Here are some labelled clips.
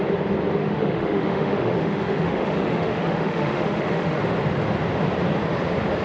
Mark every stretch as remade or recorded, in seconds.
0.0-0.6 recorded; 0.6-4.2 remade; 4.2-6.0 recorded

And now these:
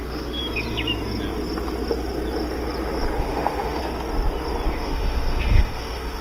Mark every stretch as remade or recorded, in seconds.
0.0-0.4 remade; 0.4-3.2 recorded; 3.2-3.8 remade; 3.8-4.7 recorded; 4.7-6.2 remade

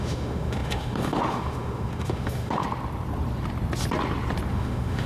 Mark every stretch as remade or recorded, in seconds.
0.0-2.6 remade; 2.6-4.5 recorded; 4.5-5.1 remade

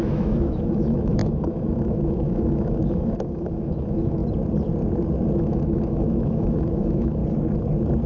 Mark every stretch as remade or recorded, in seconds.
0.0-4.2 remade; 4.2-5.4 recorded; 5.4-7.2 remade; 7.2-8.1 recorded

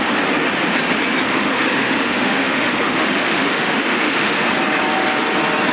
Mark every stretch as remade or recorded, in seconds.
0.0-1.2 recorded; 1.2-4.5 remade; 4.5-5.7 recorded

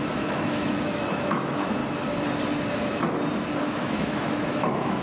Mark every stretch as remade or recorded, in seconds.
0.0-1.8 remade; 1.8-3.6 recorded; 3.6-5.0 remade

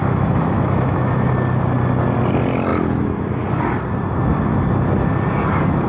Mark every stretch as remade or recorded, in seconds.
0.0-1.3 remade; 1.3-5.9 recorded

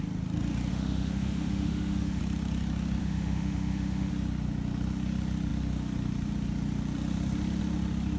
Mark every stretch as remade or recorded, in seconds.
0.0-0.7 recorded; 0.7-2.2 remade; 2.2-3.0 recorded; 3.0-4.1 remade; 4.1-8.2 recorded